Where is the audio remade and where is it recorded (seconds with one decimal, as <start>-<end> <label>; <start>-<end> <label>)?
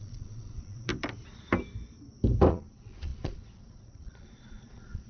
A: 0.0-0.9 remade; 0.9-2.5 recorded; 2.5-5.1 remade